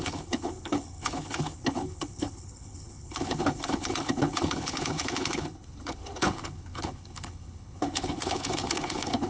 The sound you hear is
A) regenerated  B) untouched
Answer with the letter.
A